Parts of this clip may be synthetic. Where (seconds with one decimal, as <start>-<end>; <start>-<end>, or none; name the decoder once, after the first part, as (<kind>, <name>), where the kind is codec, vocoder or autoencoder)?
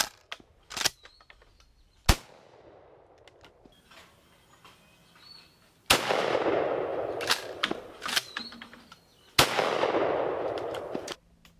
none